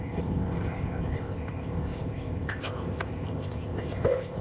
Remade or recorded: remade